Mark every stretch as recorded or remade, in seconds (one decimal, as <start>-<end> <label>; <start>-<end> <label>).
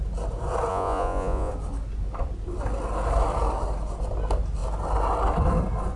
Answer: 0.0-0.7 recorded; 0.7-1.5 remade; 1.5-6.0 recorded